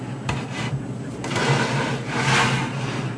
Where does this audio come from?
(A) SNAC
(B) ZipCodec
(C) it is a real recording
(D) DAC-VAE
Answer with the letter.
C